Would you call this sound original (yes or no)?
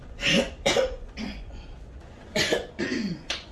no